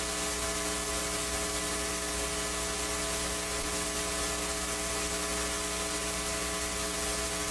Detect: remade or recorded recorded